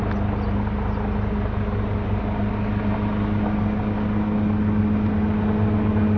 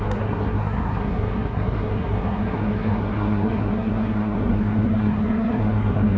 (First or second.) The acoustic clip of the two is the first